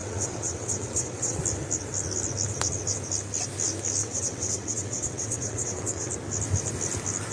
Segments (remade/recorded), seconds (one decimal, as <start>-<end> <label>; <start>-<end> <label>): 0.0-1.4 remade; 1.4-4.0 recorded; 4.0-6.1 remade; 6.1-7.3 recorded